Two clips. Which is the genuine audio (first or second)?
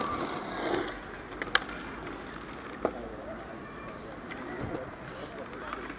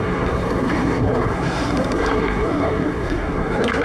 first